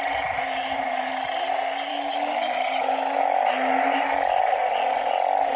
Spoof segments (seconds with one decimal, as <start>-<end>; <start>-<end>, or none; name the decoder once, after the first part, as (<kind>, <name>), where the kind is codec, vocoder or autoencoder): 0.4-1.1 (autoencoder, DAC-VAE); 1.9-4.4

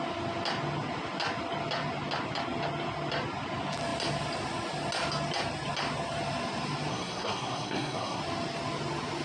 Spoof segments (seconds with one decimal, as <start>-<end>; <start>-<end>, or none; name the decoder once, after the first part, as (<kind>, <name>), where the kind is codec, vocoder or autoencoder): 6.9-8.2 (codec, SNAC)

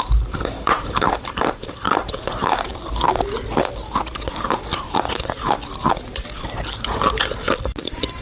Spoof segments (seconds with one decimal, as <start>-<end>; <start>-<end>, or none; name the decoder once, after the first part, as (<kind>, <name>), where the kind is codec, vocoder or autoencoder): 0.0-2.7 (vocoder, BigVGAN v2); 7.6-8.2

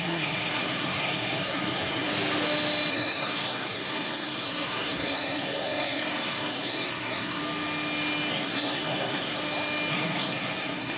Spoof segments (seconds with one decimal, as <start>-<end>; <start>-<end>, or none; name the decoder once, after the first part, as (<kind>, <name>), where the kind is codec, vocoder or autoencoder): 0.0-2.1 (codec, SNAC); 2.9-7.4; 8.3-9.4; 9.9-11.0

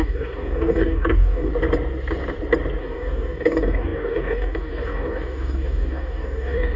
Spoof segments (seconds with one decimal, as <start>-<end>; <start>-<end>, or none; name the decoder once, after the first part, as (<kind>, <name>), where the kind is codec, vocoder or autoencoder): 0.0-1.5 (codec, DAC); 2.8-6.8